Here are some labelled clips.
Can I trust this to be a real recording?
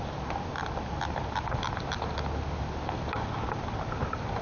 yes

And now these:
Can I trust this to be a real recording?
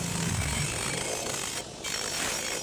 yes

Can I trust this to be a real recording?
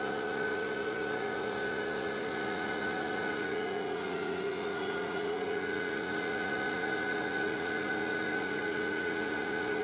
no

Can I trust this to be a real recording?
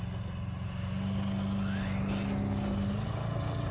yes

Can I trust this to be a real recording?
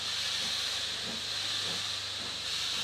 yes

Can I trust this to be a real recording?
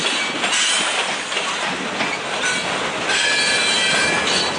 yes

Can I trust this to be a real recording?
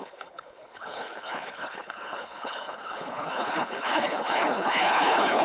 no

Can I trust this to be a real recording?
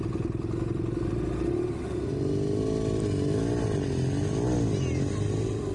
yes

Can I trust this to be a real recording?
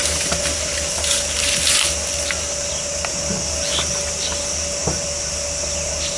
yes